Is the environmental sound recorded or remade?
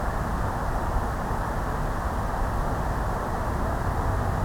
recorded